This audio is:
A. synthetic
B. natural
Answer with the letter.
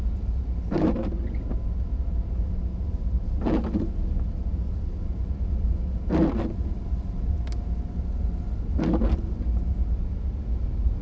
B